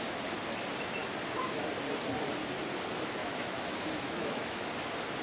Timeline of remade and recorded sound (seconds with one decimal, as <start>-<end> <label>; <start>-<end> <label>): 0.0-3.2 recorded; 3.2-4.7 remade; 4.7-5.2 recorded